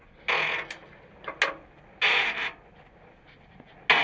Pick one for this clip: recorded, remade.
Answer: recorded